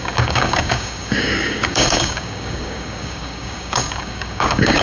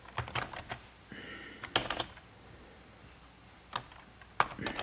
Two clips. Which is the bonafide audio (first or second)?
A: second